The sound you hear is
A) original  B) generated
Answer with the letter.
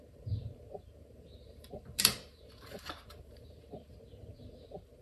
B